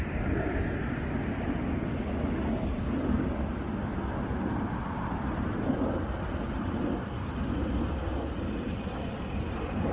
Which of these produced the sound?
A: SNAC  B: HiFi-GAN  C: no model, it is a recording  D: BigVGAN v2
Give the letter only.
C